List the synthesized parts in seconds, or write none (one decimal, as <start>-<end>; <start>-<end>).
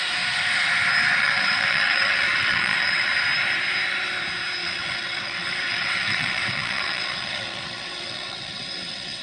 1.2-3.1; 4.6-9.2